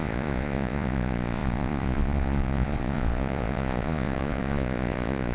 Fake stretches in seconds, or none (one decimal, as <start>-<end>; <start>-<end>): 0.0-5.3